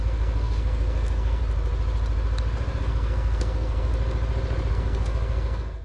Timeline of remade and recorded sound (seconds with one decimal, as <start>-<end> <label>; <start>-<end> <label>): 0.0-1.4 remade; 1.4-2.8 recorded; 2.8-3.9 remade; 3.9-4.7 recorded; 4.7-5.8 remade